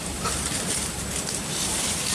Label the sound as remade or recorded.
recorded